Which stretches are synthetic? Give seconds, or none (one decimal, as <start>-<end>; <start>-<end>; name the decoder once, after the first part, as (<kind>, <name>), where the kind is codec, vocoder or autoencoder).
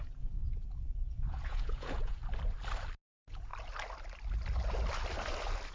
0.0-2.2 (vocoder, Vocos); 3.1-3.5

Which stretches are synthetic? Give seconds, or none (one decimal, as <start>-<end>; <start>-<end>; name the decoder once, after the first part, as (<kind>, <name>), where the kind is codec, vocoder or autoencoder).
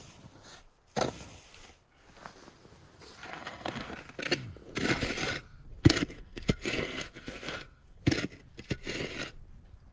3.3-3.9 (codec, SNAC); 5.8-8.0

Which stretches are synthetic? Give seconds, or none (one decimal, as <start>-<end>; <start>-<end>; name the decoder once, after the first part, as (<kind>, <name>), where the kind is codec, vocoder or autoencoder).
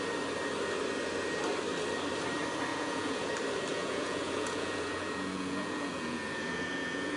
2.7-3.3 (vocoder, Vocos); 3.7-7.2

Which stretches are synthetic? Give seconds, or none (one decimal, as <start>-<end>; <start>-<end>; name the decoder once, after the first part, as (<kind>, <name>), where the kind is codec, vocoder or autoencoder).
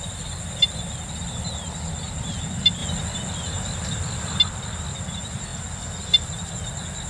none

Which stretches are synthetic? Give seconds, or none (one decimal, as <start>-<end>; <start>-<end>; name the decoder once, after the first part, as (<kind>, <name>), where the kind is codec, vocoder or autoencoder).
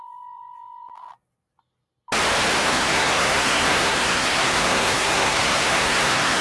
2.6-6.4 (codec, SNAC)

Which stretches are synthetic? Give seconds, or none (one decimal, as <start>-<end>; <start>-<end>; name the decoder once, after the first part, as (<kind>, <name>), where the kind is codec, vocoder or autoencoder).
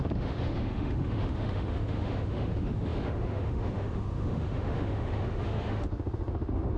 0.0-6.8 (autoencoder, DAC-VAE)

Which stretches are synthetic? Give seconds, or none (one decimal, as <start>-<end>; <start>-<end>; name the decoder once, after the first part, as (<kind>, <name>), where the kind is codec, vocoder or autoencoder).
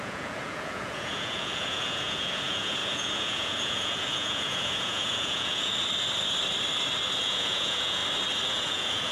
0.0-5.7 (vocoder, Vocos); 7.2-8.0; 8.5-9.1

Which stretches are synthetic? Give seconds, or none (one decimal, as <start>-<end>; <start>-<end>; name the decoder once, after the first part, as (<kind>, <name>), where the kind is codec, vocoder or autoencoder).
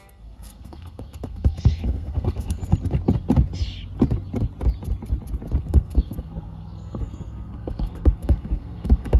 0.0-2.6 (codec, SNAC); 5.6-9.2